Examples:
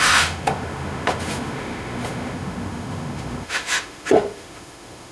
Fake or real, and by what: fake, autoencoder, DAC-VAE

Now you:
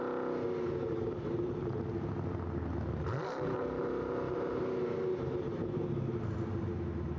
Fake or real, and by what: real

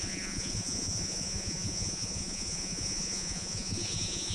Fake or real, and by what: fake, vocoder, Vocos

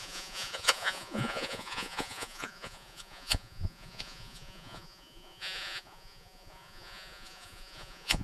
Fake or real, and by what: fake, vocoder, Vocos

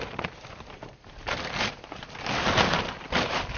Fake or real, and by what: real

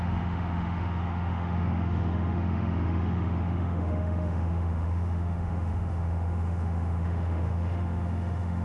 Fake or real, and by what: fake, autoencoder, DAC-VAE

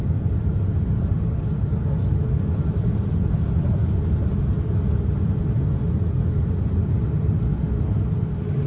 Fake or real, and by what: real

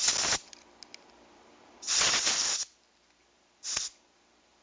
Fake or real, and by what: real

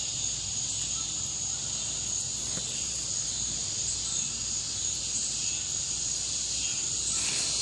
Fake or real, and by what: fake, vocoder, BigVGAN v2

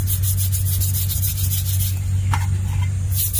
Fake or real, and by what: real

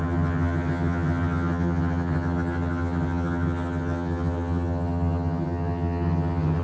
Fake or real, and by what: fake, vocoder, HiFi-GAN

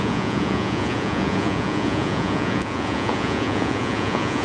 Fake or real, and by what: fake, vocoder, Vocos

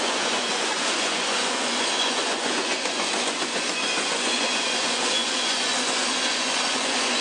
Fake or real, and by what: fake, vocoder, Vocos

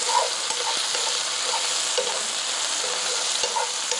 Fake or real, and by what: real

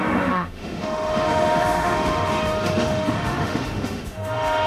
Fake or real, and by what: fake, autoencoder, DAC-VAE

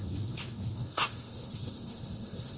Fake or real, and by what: fake, codec, SNAC